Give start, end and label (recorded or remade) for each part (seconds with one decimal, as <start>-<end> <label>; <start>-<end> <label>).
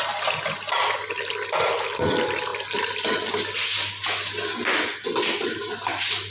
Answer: 0.0-6.3 recorded